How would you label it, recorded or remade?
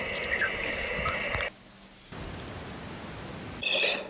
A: recorded